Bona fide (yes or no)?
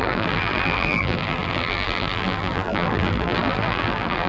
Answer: no